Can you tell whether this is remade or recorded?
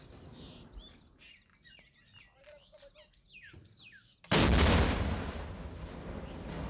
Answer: recorded